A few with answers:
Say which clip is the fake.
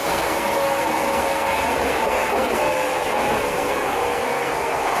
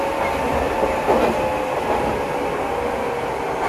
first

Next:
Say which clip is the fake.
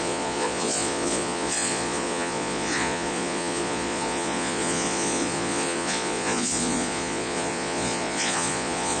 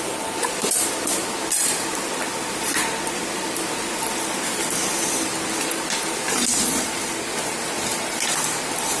first